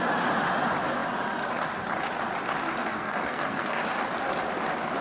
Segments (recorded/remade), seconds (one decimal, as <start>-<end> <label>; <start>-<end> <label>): 0.0-2.8 recorded; 2.8-3.8 remade; 3.8-5.0 recorded